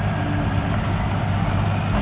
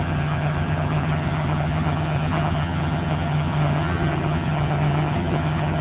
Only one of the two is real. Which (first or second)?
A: first